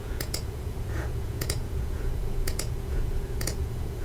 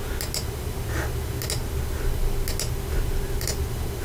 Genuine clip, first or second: second